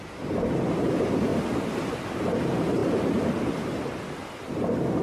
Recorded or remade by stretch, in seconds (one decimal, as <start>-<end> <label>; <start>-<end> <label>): 0.0-5.0 recorded